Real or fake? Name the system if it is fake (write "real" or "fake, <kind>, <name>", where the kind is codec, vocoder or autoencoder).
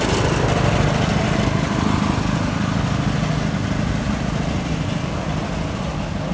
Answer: real